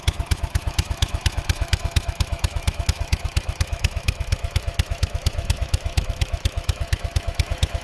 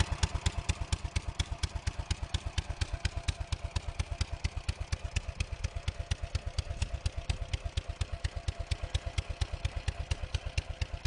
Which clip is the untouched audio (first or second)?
second